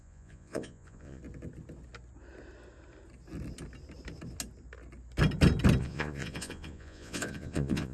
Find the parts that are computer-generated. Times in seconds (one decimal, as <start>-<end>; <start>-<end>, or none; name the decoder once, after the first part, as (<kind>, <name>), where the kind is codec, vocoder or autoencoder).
0.0-1.2 (vocoder, Vocos); 5.8-7.9